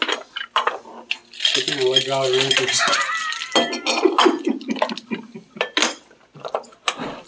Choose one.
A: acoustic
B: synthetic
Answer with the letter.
A